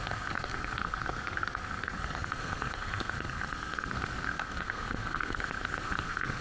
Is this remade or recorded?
remade